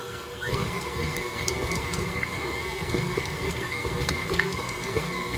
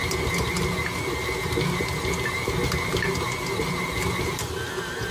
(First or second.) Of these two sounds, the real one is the second